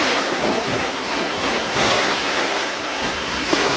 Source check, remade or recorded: remade